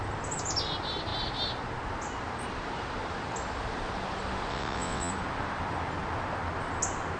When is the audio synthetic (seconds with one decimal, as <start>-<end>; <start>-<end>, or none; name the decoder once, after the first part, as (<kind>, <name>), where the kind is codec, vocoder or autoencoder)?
4.5-5.1 (vocoder, WaveNeXt)